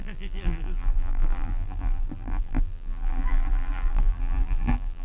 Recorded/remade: remade